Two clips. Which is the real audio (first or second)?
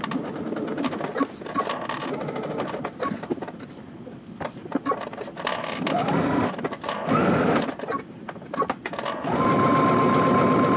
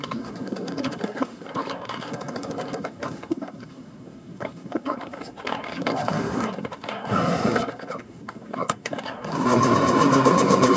first